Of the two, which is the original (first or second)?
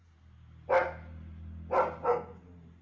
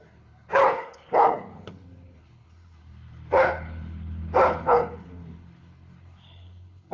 first